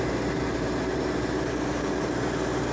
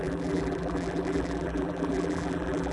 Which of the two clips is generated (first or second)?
second